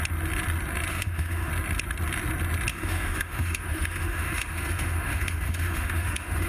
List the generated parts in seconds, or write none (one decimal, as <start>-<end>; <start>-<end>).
0.9-1.5; 2.7-6.5